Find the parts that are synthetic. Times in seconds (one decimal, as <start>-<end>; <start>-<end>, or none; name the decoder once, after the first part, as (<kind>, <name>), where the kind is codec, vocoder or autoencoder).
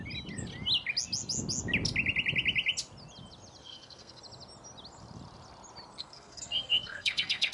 3.6-4.2 (codec, SNAC); 6.0-7.5